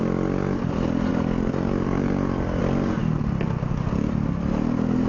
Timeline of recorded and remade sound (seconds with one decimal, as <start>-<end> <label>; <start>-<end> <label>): 0.0-5.1 recorded